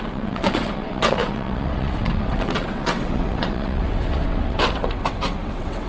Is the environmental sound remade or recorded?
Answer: remade